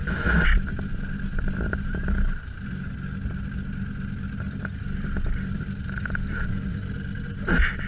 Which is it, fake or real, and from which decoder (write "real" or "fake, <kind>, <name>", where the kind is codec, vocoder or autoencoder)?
real